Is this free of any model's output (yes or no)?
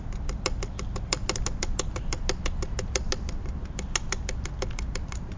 yes